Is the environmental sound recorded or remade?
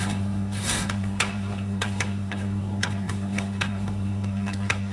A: remade